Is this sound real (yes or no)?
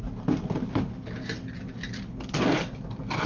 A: yes